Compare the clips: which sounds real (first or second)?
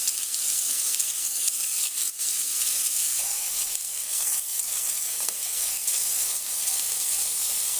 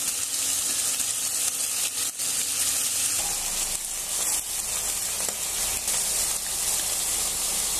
second